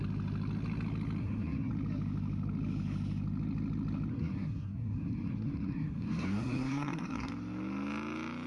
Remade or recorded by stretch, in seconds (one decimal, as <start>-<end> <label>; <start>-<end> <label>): 0.0-1.2 recorded; 1.2-1.7 remade; 1.7-4.1 recorded; 4.1-7.3 remade; 7.3-8.5 recorded